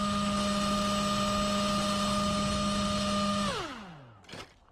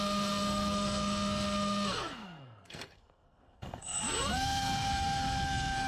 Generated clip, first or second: second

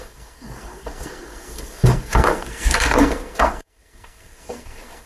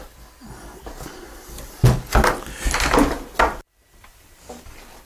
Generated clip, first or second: first